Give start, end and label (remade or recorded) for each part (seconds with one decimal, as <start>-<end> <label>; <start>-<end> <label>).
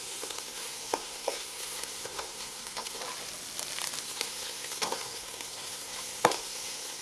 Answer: 0.0-3.0 remade; 3.0-4.0 recorded; 4.0-7.0 remade